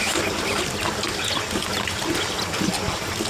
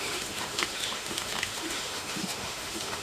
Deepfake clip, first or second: second